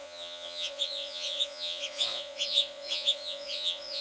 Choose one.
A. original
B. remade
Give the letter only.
B